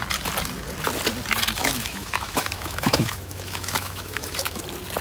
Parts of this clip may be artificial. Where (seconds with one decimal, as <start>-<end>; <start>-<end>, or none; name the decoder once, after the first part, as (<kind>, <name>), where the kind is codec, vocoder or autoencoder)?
1.6-4.6 (autoencoder, DAC-VAE)